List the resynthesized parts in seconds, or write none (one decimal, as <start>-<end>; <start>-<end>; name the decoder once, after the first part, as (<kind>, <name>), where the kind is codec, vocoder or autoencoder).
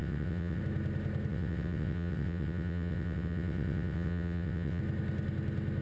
0.0-0.6 (vocoder, WaveNeXt); 1.3-4.8